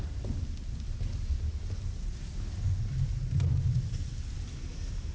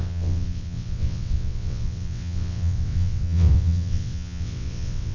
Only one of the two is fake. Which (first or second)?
second